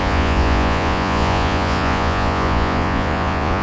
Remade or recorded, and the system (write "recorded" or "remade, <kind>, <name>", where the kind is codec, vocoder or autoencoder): remade, vocoder, Vocos